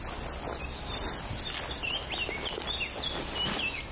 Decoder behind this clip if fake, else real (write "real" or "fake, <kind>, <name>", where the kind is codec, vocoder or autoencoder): real